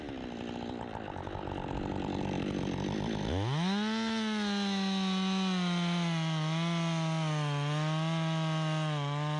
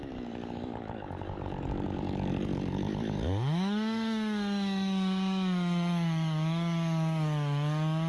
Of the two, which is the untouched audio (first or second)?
first